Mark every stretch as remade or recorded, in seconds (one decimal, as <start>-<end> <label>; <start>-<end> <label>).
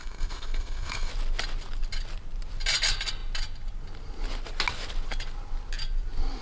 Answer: 0.0-1.1 remade; 1.1-6.4 recorded